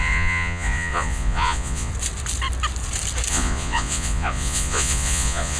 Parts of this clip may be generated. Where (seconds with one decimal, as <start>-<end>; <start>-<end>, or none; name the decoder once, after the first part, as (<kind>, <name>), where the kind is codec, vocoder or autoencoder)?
0.0-1.9 (vocoder, Vocos); 3.3-5.6